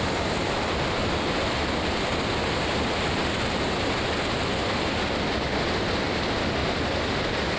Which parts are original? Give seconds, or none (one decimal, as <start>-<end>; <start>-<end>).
0.0-6.6